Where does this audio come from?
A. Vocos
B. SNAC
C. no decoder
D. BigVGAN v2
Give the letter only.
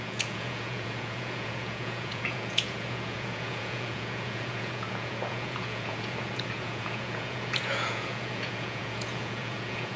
A